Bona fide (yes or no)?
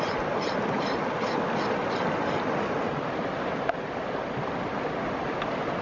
yes